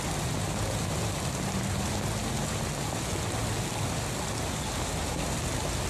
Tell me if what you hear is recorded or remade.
recorded